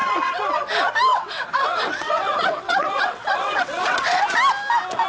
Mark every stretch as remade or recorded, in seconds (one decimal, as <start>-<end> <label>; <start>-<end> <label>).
0.0-0.6 remade; 0.6-1.1 recorded; 1.1-4.2 remade; 4.2-5.1 recorded